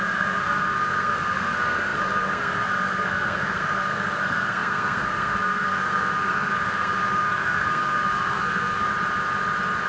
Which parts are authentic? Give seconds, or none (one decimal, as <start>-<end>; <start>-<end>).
8.9-9.9